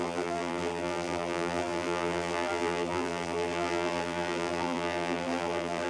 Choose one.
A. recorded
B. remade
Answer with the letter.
B